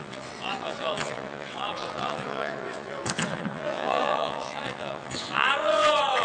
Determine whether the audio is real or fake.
fake